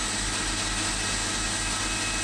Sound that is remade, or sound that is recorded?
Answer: recorded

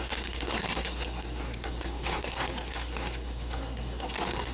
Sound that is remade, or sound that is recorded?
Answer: remade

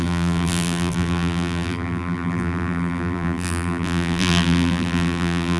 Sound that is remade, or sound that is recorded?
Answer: remade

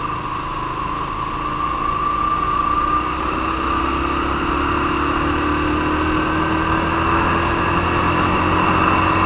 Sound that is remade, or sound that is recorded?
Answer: recorded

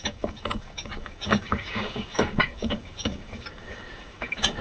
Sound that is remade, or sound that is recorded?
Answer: remade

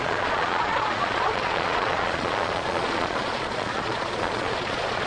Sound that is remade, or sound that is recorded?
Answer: remade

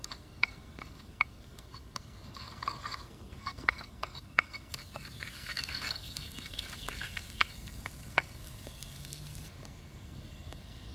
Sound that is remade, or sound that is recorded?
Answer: remade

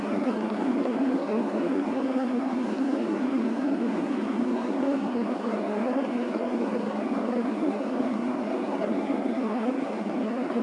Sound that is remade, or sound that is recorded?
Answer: remade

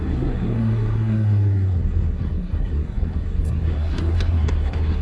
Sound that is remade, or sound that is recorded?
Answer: remade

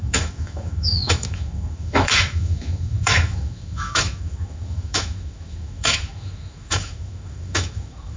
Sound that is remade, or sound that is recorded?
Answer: remade